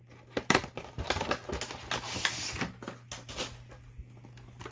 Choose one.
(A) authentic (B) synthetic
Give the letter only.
A